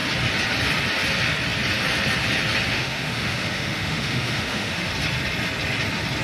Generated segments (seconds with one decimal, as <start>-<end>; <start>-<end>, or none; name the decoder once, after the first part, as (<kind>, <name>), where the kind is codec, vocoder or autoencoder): 2.7-4.9 (autoencoder, DAC-VAE)